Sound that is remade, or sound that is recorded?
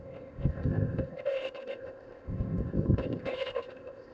remade